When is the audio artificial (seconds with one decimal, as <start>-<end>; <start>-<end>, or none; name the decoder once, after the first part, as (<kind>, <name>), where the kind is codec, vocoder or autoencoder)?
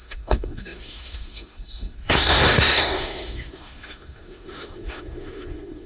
0.0-5.9 (codec, SNAC)